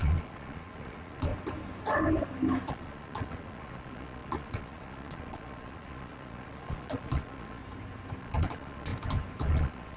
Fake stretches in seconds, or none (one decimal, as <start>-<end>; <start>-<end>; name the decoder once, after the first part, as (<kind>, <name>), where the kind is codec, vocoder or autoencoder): 0.0-1.3 (vocoder, Vocos); 2.7-7.6; 8.2-8.9; 9.4-10.0